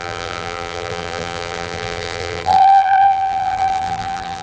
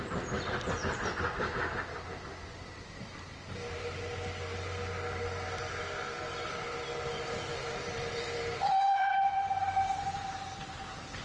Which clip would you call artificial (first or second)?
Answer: first